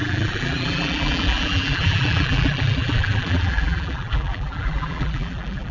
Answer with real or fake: fake